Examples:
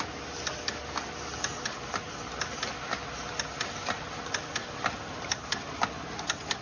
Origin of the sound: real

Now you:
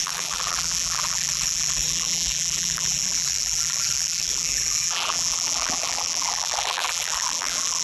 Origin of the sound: fake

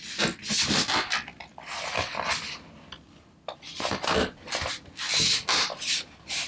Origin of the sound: real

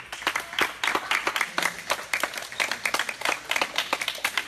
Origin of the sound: real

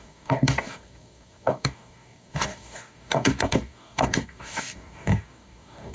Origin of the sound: fake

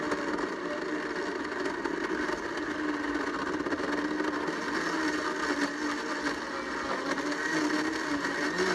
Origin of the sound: real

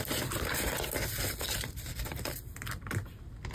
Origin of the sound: fake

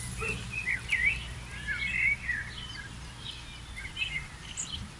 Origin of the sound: real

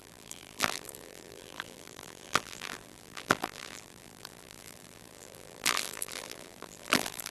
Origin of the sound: fake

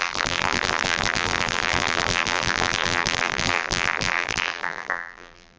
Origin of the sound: fake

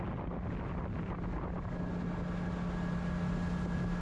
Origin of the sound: real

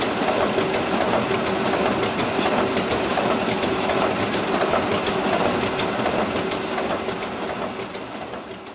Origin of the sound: real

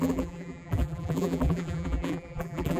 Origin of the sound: fake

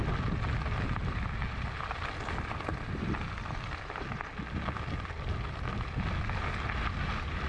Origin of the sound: real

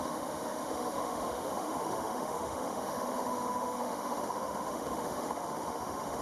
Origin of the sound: fake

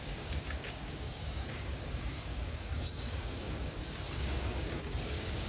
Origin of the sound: fake